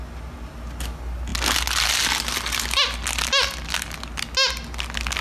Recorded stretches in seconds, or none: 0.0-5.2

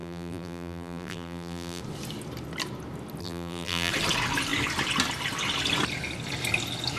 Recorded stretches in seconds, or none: 1.8-3.2; 3.9-7.0

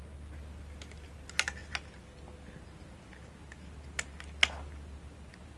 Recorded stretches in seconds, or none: 0.0-5.6